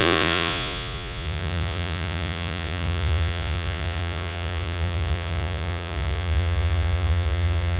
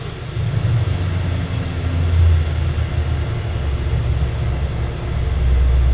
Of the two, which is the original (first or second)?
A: second